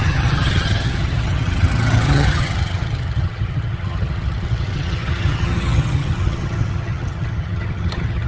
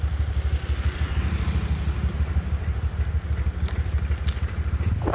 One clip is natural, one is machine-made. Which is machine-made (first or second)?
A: first